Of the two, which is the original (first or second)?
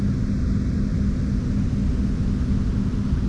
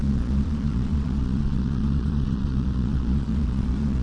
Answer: first